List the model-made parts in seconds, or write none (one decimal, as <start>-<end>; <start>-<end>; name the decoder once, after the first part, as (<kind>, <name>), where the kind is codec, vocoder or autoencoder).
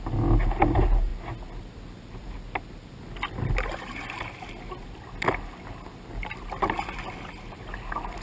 none